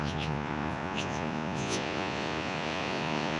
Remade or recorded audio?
remade